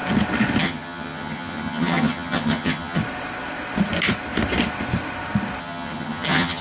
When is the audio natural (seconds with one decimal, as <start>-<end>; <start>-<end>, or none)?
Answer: 0.0-0.6; 3.0-5.6